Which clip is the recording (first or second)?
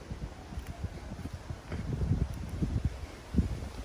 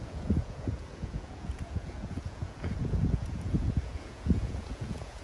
first